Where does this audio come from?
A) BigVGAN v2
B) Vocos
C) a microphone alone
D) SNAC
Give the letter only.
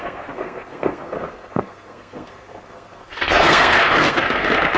D